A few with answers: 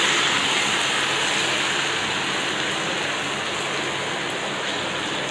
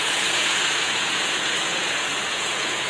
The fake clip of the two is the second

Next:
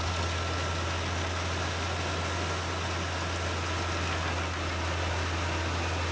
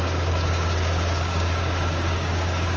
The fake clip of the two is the second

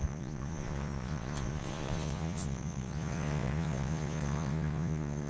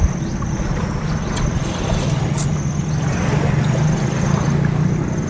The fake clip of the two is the first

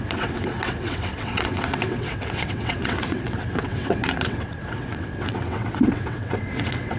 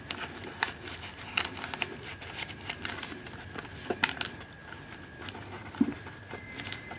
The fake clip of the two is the first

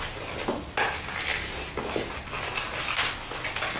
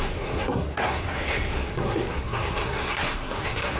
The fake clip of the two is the second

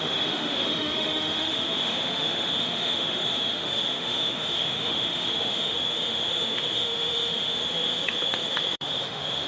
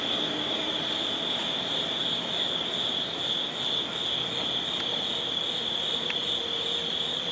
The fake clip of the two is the first